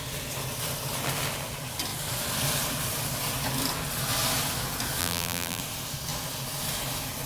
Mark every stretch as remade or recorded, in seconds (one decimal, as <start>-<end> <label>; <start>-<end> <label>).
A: 0.0-5.0 recorded; 5.0-5.6 remade; 5.6-7.3 recorded

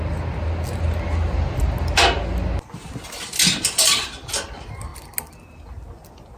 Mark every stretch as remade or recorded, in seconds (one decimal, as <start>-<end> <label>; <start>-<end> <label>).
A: 0.0-6.4 recorded

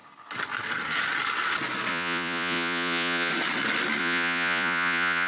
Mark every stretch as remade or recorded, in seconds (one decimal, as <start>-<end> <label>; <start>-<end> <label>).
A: 0.0-1.9 recorded; 1.9-3.3 remade; 3.3-4.0 recorded; 4.0-5.3 remade